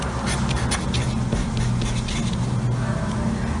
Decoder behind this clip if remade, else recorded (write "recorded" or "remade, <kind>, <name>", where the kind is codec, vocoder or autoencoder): recorded